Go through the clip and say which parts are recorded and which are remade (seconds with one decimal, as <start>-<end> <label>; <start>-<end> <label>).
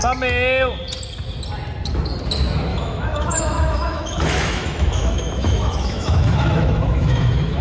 0.0-2.7 recorded; 2.7-7.6 remade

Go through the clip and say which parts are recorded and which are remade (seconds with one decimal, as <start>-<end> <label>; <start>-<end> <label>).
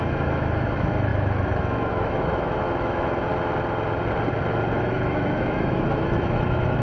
0.0-3.3 remade; 3.3-4.8 recorded; 4.8-6.8 remade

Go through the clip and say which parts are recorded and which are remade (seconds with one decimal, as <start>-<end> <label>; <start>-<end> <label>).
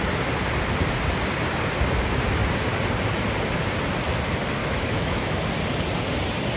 0.0-4.6 recorded; 4.6-5.4 remade; 5.4-6.6 recorded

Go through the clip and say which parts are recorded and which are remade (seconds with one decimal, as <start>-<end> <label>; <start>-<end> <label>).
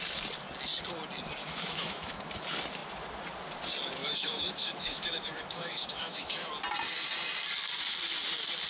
0.0-1.4 recorded; 1.4-2.3 remade; 2.3-4.0 recorded; 4.0-6.5 remade; 6.5-8.7 recorded